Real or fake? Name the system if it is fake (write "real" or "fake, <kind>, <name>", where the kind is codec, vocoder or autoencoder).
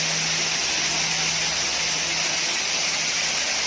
real